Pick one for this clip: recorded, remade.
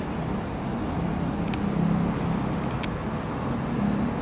recorded